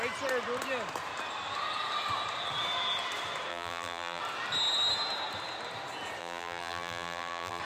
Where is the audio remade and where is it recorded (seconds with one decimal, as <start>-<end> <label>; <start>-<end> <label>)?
0.0-3.5 recorded; 3.5-4.2 remade; 4.2-6.2 recorded; 6.2-7.6 remade